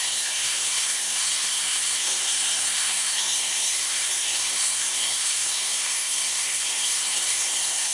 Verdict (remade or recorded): remade